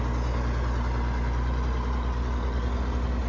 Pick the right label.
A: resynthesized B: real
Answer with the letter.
B